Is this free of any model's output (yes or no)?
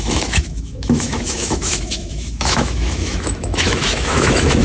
no